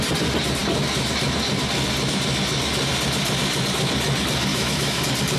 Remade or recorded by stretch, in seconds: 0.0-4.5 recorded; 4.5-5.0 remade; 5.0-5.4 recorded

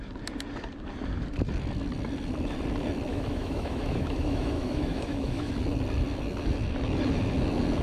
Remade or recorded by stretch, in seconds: 0.0-3.1 recorded; 3.1-5.5 remade; 5.5-7.8 recorded